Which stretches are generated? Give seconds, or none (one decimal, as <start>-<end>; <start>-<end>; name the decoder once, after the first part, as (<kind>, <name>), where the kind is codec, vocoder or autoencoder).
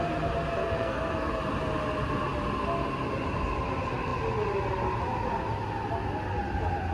0.6-1.4 (codec, SNAC)